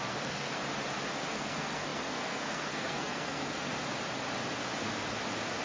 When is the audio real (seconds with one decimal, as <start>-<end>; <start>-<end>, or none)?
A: 0.6-1.3; 3.7-5.6